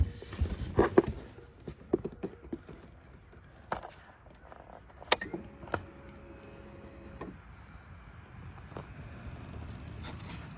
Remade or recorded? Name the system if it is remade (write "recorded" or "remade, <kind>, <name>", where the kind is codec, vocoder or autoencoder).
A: recorded